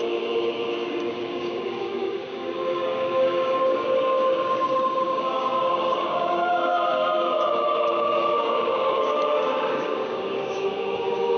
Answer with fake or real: fake